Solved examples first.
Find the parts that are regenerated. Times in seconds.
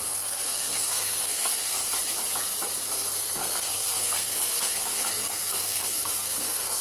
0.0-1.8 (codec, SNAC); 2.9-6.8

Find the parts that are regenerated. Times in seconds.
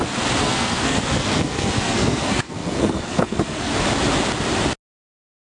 0.4-3.7 (codec, SNAC)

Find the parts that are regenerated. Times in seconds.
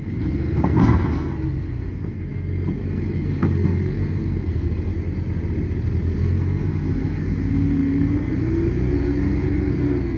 0.0-4.9 (codec, SNAC); 6.2-10.2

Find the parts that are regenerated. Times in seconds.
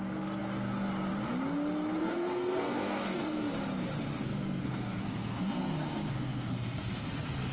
2.0-3.5 (codec, SNAC); 4.1-7.1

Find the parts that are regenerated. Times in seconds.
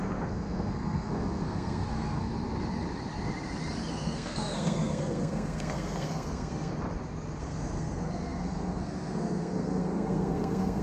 0.0-2.3 (codec, SNAC); 3.9-6.7; 7.4-10.8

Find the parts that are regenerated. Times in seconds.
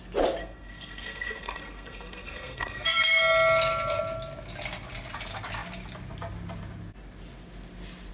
0.4-3.2 (codec, SNAC)